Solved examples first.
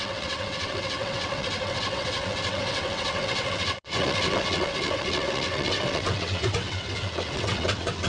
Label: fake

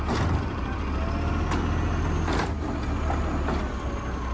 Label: real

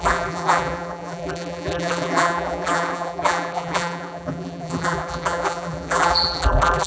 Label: fake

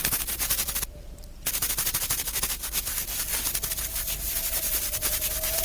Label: fake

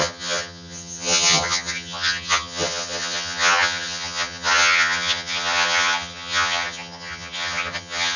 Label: fake